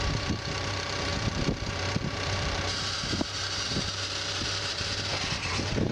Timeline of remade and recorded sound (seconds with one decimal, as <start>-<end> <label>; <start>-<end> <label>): 0.0-5.9 remade